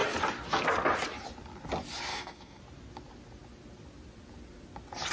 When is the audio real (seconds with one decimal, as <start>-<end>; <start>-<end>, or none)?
0.0-2.1; 2.6-5.1